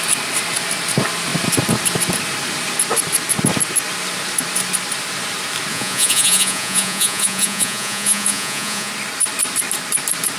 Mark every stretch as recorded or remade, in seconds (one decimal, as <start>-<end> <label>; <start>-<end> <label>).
0.0-5.7 recorded; 5.7-8.9 remade; 8.9-10.4 recorded

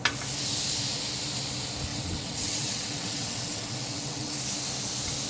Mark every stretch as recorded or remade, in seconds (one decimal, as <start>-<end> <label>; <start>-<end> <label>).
0.0-1.9 recorded; 1.9-4.3 remade; 4.3-5.3 recorded

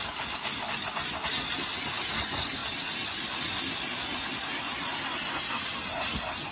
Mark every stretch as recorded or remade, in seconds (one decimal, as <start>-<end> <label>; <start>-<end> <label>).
0.0-6.5 recorded